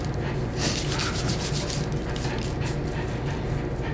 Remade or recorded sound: recorded